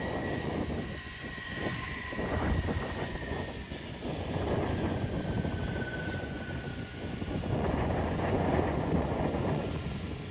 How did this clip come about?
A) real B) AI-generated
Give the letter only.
B